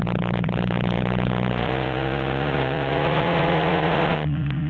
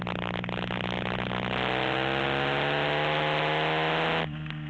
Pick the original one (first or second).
second